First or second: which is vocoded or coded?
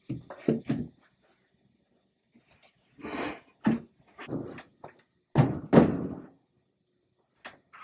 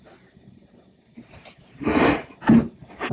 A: second